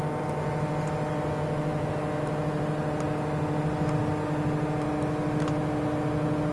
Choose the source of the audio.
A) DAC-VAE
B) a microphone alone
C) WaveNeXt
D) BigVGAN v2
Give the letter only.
B